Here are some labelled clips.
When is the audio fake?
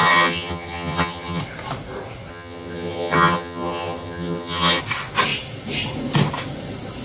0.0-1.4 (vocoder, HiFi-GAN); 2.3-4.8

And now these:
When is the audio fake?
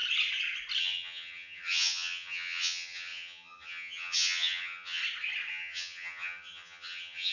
0.8-5.0 (vocoder, HiFi-GAN); 5.5-7.3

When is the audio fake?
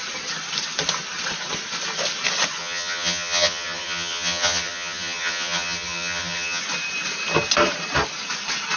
2.6-6.6 (vocoder, HiFi-GAN)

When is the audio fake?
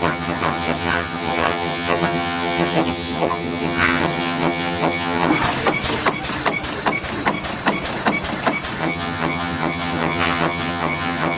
0.0-5.3 (vocoder, HiFi-GAN); 8.8-11.4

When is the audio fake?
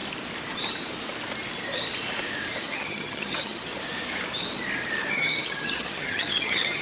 2.6-3.7 (vocoder, HiFi-GAN); 5.1-6.8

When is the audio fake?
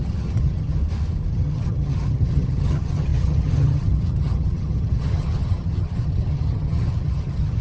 0.0-0.8 (vocoder, HiFi-GAN); 1.3-7.6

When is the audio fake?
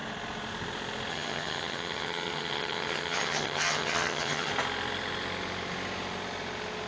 1.1-4.5 (vocoder, HiFi-GAN)